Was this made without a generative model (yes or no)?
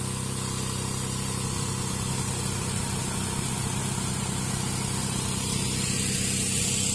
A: yes